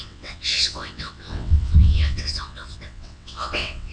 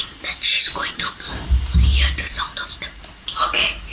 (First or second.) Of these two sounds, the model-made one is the first